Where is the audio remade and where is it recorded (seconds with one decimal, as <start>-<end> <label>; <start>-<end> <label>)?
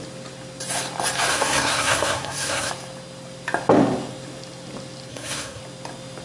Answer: 0.0-1.3 recorded; 1.3-2.7 remade; 2.7-5.1 recorded; 5.1-5.6 remade; 5.6-6.2 recorded